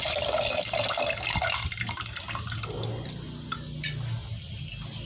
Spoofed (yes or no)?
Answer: no